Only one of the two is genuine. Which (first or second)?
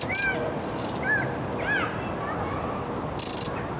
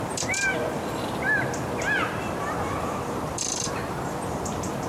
first